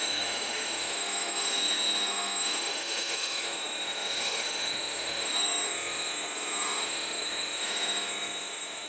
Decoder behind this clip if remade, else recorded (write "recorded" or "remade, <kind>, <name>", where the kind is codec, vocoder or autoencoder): remade, autoencoder, DAC-VAE